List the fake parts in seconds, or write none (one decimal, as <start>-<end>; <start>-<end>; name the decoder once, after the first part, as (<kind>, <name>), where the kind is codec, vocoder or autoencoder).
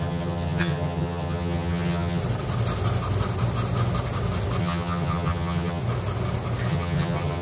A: 0.0-2.2 (vocoder, HiFi-GAN); 4.6-5.8; 6.7-7.4